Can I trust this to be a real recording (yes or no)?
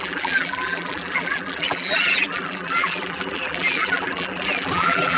no